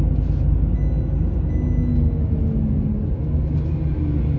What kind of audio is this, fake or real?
real